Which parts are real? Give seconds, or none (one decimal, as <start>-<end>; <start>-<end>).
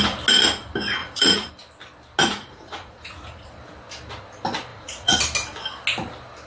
0.0-1.0; 1.5-2.2; 3.6-4.7; 5.2-6.5